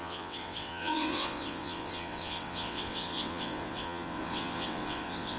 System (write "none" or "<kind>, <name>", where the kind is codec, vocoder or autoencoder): vocoder, WaveNeXt